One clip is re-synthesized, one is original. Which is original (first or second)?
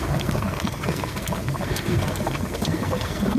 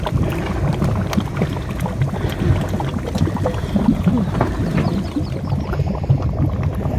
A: second